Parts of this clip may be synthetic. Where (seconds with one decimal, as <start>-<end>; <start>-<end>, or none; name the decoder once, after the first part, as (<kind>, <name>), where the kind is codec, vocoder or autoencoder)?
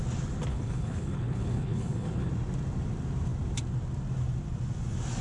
0.5-2.3 (codec, HILCodec)